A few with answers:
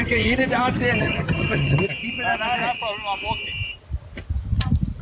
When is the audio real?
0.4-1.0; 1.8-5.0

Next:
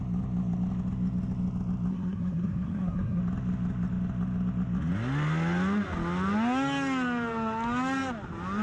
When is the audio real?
0.0-1.9; 3.2-8.6

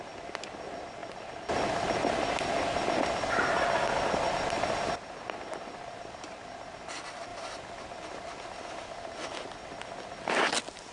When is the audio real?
0.0-10.9

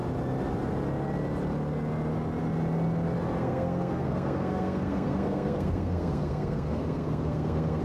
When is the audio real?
0.0-3.4

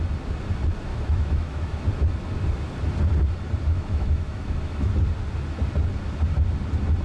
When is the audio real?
0.0-0.9; 1.8-3.7; 4.9-7.0

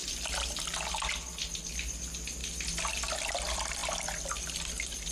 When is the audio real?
0.0-5.1

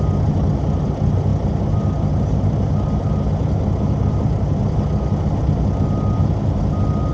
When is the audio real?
0.0-7.1